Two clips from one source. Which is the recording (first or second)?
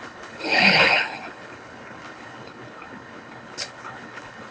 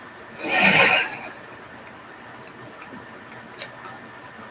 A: second